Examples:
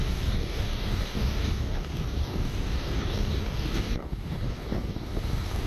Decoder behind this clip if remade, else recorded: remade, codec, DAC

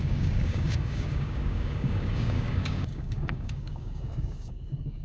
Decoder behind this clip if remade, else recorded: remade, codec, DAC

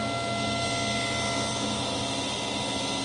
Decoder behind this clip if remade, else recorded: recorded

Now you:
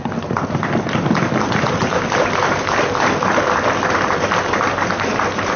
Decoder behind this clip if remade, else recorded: recorded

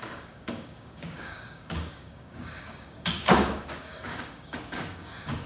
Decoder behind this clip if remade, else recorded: remade, codec, DAC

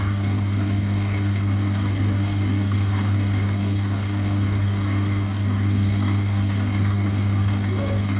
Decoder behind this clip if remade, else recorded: remade, codec, DAC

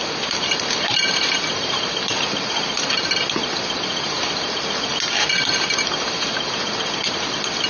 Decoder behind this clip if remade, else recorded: recorded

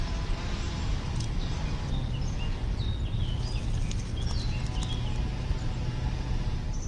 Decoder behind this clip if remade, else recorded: recorded